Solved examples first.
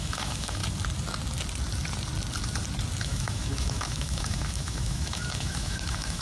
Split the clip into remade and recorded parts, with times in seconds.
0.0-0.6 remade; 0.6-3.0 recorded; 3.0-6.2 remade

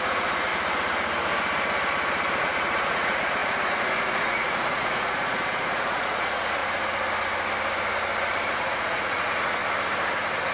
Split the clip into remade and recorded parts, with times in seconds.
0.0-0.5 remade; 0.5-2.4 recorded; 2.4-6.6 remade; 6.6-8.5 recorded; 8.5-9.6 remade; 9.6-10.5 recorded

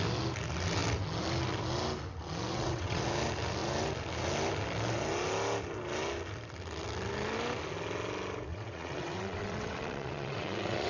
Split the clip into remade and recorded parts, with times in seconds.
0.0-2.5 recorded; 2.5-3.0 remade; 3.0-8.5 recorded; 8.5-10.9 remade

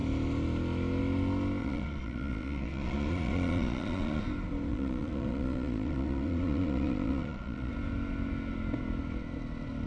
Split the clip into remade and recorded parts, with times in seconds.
0.0-1.6 recorded; 1.6-4.2 remade; 4.2-4.7 recorded; 4.7-7.7 remade; 7.7-9.9 recorded

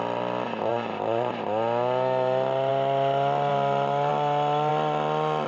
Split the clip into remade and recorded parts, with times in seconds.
0.0-0.7 recorded; 0.7-1.3 remade; 1.3-5.5 recorded

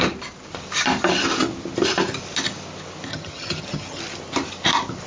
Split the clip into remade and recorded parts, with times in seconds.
0.0-3.1 recorded; 3.1-4.0 remade; 4.0-5.1 recorded

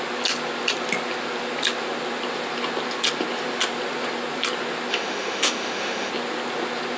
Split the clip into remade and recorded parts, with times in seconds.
0.0-4.9 recorded; 4.9-6.1 remade; 6.1-7.0 recorded